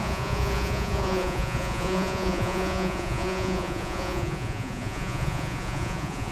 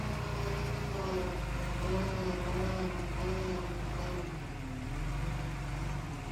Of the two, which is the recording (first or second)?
second